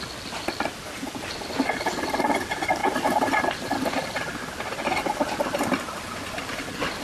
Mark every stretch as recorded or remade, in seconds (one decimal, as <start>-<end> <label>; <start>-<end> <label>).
0.0-2.8 recorded; 2.8-3.5 remade; 3.5-7.0 recorded